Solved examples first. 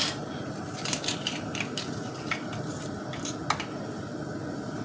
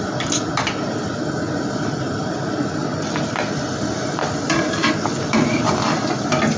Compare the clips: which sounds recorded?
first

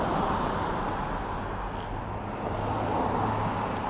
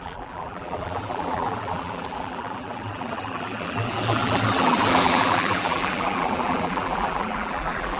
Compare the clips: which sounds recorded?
first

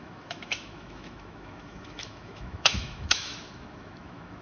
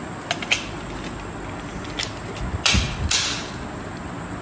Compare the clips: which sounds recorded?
second